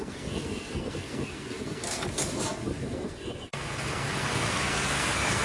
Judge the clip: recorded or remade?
remade